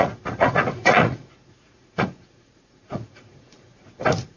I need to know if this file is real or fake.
fake